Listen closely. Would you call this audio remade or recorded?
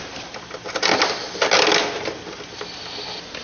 recorded